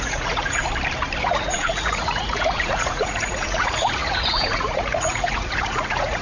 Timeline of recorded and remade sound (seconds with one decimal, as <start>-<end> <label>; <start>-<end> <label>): 0.0-0.6 remade; 0.6-1.2 recorded; 1.2-6.2 remade

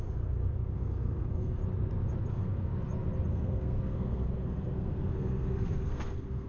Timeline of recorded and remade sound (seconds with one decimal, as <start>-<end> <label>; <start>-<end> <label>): 0.0-1.6 remade; 1.6-2.3 recorded; 2.3-2.7 remade; 2.7-3.3 recorded; 3.3-6.5 remade

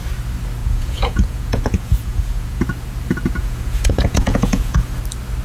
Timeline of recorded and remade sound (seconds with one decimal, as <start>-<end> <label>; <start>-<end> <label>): 0.0-0.6 recorded; 0.6-2.6 remade; 2.6-3.4 recorded; 3.4-5.0 remade; 5.0-5.4 recorded

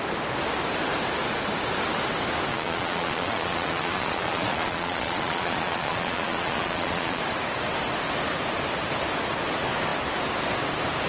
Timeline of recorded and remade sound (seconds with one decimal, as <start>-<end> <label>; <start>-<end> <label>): 0.0-2.5 recorded; 2.5-7.2 remade; 7.2-11.1 recorded

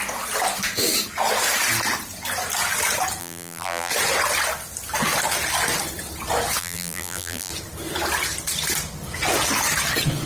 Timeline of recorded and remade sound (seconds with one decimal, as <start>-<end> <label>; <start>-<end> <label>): 0.0-3.2 recorded; 3.2-3.9 remade; 3.9-6.6 recorded; 6.6-7.5 remade; 7.5-10.3 recorded

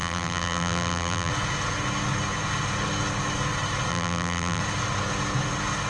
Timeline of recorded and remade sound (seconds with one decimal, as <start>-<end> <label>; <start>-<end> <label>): 0.0-1.3 remade; 1.3-3.9 recorded; 3.9-4.6 remade; 4.6-5.9 recorded